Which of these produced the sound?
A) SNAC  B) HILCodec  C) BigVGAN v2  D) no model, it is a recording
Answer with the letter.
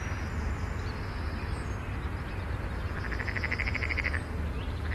D